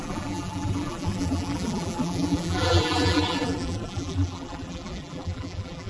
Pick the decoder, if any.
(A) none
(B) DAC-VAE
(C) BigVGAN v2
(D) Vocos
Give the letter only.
C